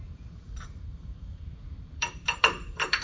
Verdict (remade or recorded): remade